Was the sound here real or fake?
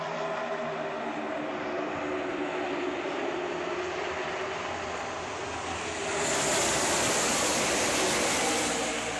real